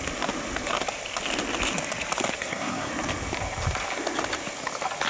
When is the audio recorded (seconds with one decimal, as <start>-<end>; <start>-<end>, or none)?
0.0-2.4; 2.9-5.1